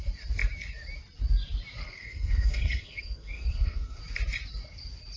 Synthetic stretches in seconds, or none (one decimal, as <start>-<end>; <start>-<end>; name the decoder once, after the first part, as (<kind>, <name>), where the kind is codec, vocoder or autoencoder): 1.8-4.0 (codec, SNAC)